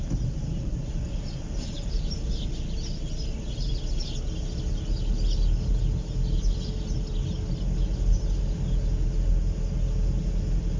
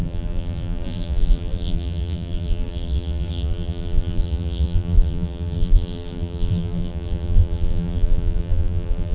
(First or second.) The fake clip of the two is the second